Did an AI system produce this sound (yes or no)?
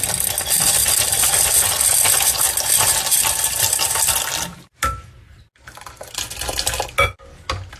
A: no